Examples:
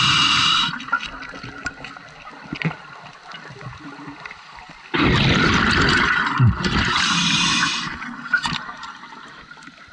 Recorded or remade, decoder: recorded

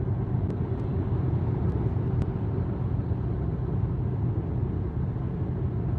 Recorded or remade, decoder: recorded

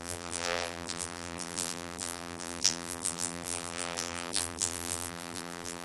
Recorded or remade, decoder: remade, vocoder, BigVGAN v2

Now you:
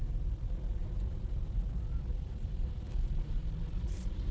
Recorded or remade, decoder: remade, vocoder, BigVGAN v2